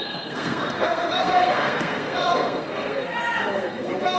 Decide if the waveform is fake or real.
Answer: fake